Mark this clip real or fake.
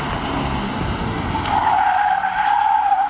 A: real